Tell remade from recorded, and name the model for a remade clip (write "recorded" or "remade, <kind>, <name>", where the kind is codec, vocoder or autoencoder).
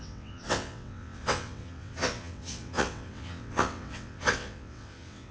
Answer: remade, vocoder, WaveNeXt